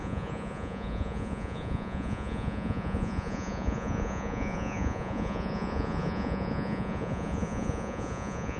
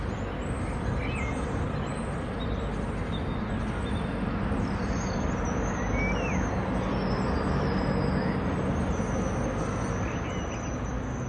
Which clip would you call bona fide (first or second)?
second